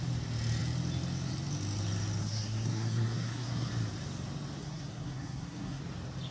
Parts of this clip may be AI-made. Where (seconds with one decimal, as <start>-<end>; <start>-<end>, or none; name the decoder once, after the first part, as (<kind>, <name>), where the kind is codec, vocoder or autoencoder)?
2.2-3.7 (codec, SNAC); 4.6-5.8